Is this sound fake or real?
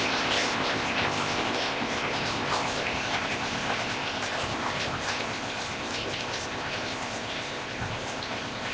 fake